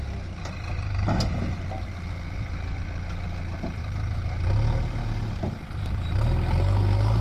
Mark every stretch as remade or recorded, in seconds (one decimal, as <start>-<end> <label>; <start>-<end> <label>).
0.0-7.2 recorded